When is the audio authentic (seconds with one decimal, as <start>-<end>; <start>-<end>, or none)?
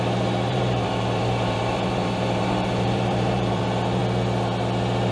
0.0-0.5; 3.6-5.1